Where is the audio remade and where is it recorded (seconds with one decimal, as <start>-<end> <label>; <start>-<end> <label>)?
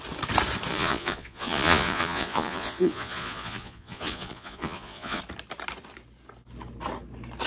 0.0-0.7 recorded; 0.7-5.2 remade; 5.2-7.5 recorded